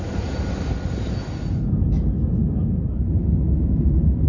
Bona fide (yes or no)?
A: yes